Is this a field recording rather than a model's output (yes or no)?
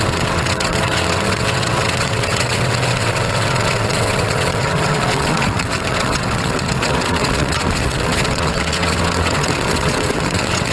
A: no